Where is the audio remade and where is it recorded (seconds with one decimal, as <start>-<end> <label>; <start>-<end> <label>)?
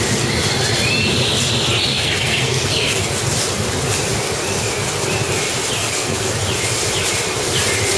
0.0-1.9 recorded; 1.9-3.1 remade; 3.1-5.8 recorded; 5.8-6.3 remade; 6.3-8.0 recorded